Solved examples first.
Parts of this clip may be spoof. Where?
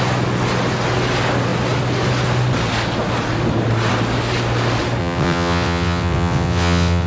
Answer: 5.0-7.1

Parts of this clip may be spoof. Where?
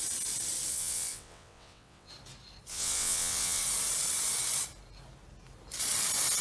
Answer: 0.7-2.1; 2.7-3.6